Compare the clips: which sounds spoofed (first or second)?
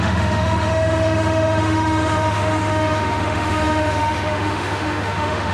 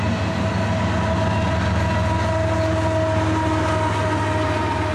first